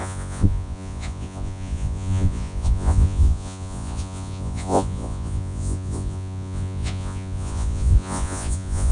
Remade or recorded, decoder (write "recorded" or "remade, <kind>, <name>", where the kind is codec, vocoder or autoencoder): remade, vocoder, Vocos